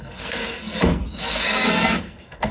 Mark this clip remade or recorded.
remade